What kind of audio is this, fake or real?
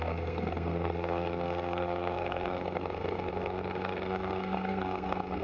fake